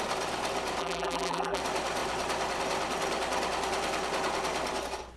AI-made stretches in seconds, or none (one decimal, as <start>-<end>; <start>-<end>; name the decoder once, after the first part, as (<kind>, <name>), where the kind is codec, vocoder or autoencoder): 0.8-1.6 (vocoder, BigVGAN v2)